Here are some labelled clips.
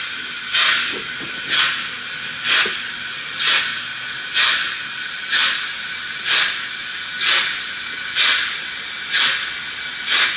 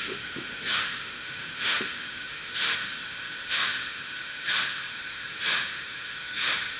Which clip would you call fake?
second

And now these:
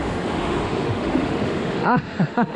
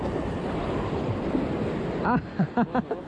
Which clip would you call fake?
first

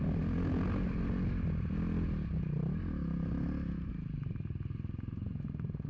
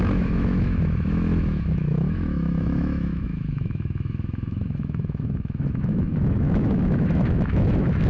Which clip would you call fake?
second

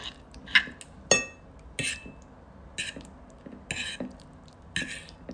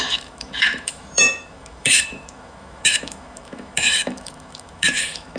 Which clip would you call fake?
second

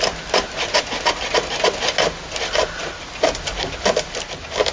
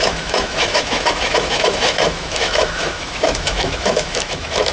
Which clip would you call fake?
second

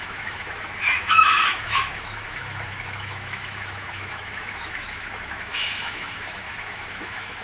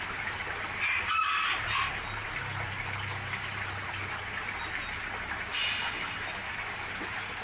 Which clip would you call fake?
first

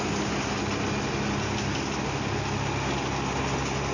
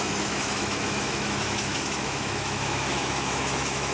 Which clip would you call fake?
second